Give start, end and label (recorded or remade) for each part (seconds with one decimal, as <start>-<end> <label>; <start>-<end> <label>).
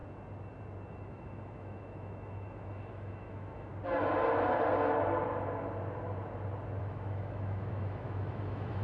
0.0-0.9 recorded; 0.9-3.7 remade; 3.7-6.8 recorded; 6.8-8.8 remade